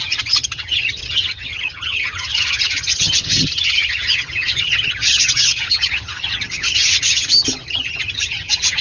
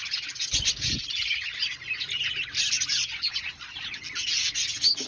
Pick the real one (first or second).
second